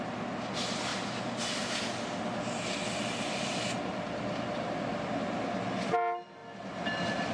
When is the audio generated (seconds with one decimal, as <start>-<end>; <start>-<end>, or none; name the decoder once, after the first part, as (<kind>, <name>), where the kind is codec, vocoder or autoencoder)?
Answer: none